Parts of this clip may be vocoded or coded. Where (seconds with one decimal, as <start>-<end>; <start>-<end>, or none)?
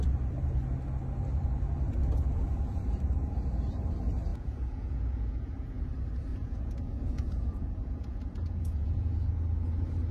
4.3-5.8; 6.3-9.4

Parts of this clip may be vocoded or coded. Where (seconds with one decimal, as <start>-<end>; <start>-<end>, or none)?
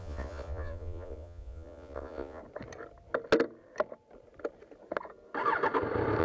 0.0-2.4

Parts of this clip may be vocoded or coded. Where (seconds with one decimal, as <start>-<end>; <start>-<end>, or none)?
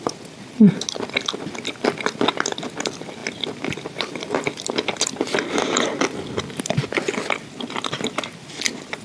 none